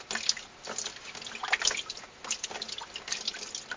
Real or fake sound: real